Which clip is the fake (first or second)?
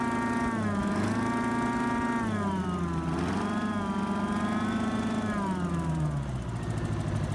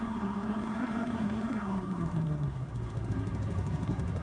second